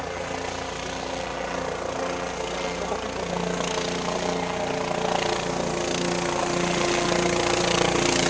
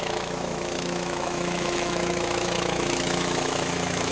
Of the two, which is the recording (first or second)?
first